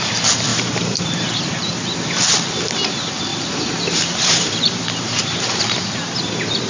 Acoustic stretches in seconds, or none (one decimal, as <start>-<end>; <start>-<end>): 0.0-0.5; 1.7-3.3; 5.6-6.7